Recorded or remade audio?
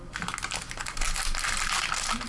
recorded